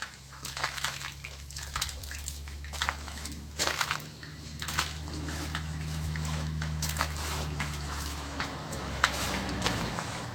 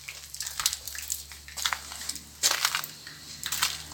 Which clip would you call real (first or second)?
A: second